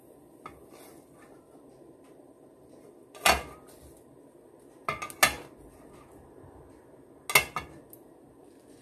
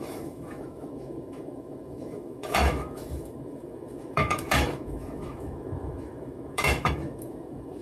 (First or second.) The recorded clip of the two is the first